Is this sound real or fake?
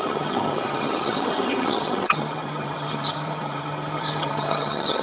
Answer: fake